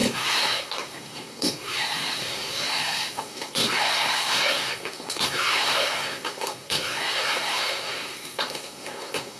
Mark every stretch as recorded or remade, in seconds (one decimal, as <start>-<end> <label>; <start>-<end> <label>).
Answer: 0.0-9.4 remade